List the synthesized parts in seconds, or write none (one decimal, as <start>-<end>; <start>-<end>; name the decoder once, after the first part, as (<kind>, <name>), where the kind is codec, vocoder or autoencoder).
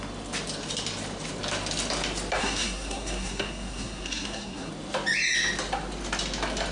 2.4-4.7 (codec, SNAC)